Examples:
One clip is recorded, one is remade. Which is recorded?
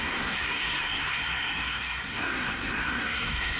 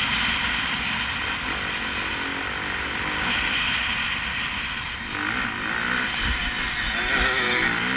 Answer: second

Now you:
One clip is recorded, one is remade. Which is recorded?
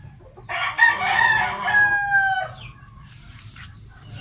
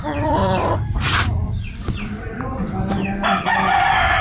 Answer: first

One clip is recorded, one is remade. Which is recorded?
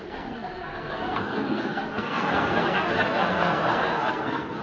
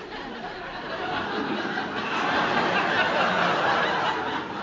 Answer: second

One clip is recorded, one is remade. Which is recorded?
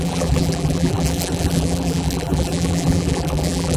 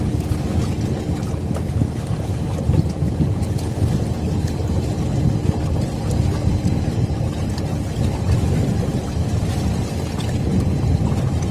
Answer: second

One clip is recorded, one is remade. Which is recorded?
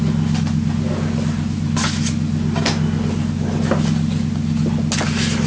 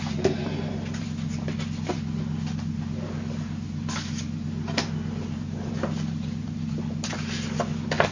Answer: first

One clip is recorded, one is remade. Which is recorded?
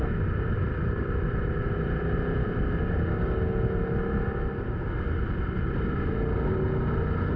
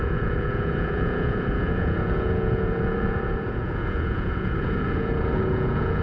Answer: first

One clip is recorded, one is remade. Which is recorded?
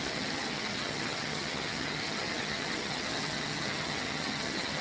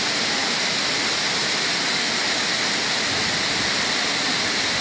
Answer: second